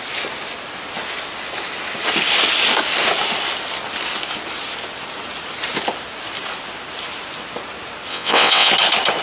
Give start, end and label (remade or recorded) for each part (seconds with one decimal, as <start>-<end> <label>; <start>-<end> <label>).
0.0-8.1 recorded; 8.1-8.7 remade; 8.7-9.2 recorded